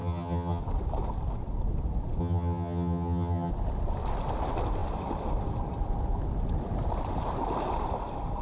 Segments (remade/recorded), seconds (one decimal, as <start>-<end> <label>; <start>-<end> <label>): 0.0-0.6 remade; 0.6-2.2 recorded; 2.2-3.5 remade; 3.5-8.4 recorded